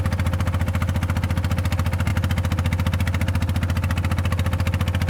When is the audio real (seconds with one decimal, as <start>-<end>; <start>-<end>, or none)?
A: 0.0-5.1